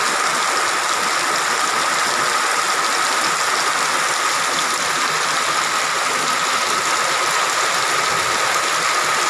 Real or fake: real